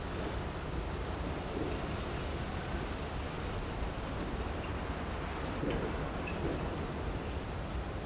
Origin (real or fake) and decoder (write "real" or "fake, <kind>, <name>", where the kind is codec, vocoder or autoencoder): real